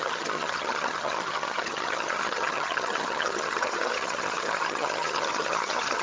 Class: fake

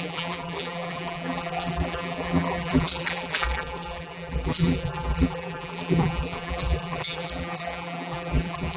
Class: fake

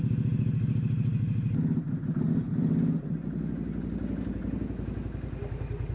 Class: real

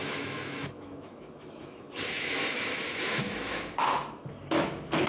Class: fake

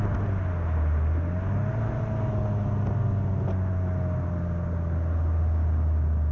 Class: real